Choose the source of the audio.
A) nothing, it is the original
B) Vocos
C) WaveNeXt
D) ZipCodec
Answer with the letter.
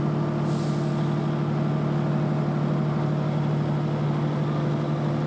A